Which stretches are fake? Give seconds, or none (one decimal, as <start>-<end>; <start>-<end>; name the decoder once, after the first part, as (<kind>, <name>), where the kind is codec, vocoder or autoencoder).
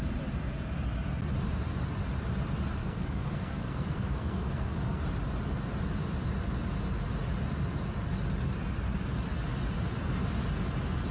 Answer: 2.8-5.0 (codec, SNAC)